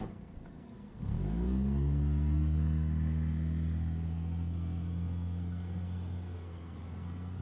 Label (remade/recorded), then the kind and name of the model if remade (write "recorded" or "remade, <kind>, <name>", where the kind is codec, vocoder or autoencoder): remade, codec, SNAC